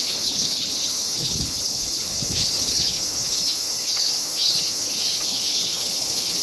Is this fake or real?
fake